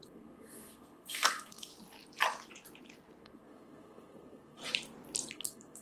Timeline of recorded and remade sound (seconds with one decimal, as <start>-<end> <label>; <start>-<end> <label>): 0.0-1.7 remade; 1.7-3.2 recorded; 3.2-4.6 remade; 4.6-5.3 recorded; 5.3-5.8 remade

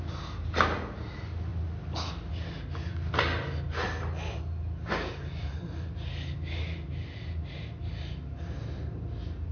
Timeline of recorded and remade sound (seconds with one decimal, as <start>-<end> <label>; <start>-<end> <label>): 0.0-9.5 recorded